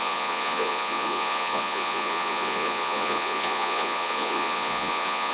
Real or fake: fake